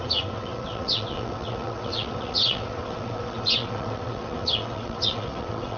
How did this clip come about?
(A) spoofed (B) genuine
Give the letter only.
A